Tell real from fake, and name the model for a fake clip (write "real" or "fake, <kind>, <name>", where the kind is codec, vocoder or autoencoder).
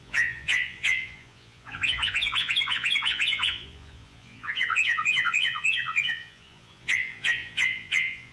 fake, vocoder, Vocos